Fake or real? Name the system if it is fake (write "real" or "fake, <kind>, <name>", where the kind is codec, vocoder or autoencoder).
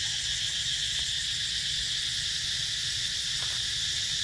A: real